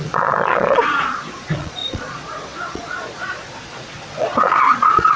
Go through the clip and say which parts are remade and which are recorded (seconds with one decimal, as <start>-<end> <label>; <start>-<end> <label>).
0.0-5.2 remade